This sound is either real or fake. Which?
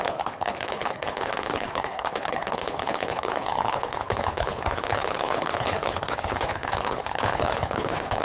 fake